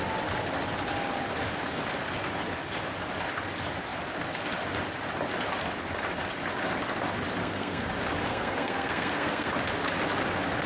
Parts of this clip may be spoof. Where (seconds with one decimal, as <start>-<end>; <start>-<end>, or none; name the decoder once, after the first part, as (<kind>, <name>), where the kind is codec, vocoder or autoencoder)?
7.4-7.9 (codec, SNAC); 8.3-9.5

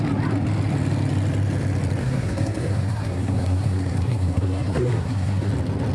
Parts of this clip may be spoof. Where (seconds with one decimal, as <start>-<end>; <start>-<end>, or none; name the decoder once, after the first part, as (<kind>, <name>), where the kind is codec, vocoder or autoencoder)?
2.0-5.5 (codec, SNAC)

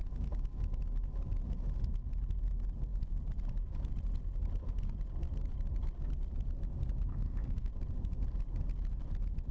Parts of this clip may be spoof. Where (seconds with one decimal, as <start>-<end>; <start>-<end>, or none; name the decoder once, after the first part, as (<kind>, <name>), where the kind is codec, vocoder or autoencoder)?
7.1-7.7 (codec, SNAC)

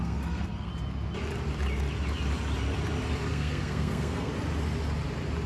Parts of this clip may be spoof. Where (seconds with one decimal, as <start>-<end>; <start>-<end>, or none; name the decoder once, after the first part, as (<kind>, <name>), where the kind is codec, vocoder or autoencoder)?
0.0-0.7 (codec, SNAC); 3.3-4.3

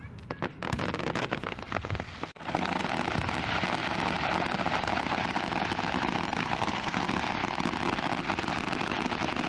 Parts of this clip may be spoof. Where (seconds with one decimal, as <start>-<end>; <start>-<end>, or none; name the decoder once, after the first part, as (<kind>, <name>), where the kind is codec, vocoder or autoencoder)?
1.2-2.8 (codec, SNAC); 6.4-7.0

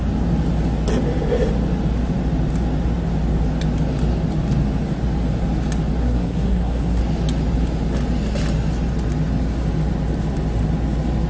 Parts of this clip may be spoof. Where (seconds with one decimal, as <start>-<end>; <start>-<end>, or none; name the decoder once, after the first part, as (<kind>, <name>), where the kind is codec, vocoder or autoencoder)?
6.0-7.0 (codec, SNAC)

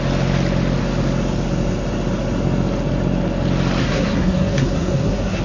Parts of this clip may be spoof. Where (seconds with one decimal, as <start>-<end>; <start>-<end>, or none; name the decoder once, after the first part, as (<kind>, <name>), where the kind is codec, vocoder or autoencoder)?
3.8-5.4 (codec, SNAC)